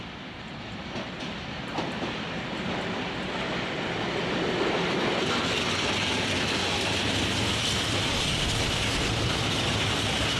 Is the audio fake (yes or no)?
no